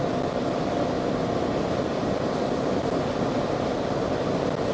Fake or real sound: real